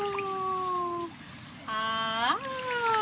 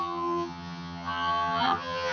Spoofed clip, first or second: second